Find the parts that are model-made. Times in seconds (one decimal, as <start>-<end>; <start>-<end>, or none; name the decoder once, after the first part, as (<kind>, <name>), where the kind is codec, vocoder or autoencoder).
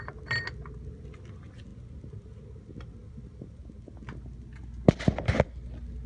none